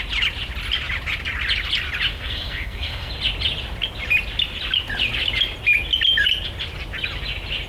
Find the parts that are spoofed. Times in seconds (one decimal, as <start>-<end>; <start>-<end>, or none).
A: 2.1-3.1